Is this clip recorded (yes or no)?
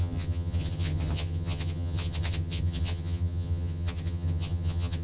no